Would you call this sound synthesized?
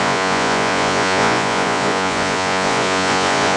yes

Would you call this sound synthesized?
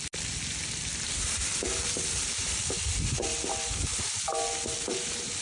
no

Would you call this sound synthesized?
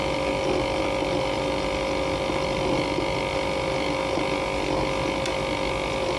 no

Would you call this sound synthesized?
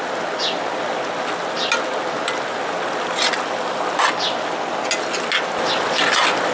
no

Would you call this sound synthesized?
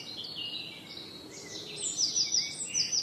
no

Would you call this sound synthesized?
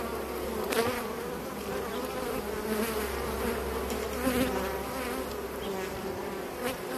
yes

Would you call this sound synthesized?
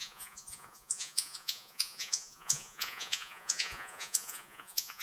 yes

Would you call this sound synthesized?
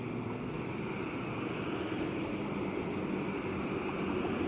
no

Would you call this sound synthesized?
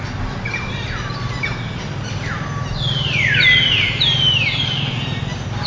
no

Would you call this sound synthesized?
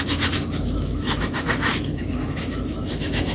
yes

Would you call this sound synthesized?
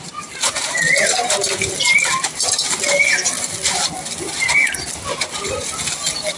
yes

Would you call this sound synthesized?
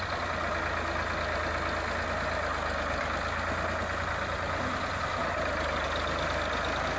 no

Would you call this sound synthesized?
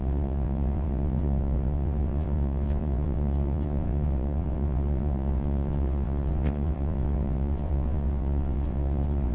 yes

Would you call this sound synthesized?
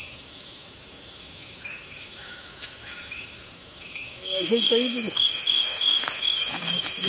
yes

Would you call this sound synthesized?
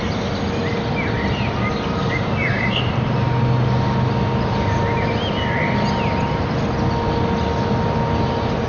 no